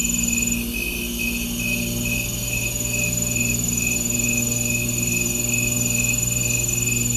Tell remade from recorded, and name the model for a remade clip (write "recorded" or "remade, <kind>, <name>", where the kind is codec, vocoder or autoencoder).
recorded